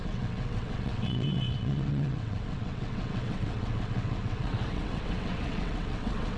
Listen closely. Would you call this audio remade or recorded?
remade